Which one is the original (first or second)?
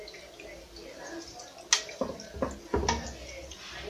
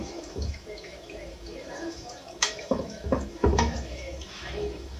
first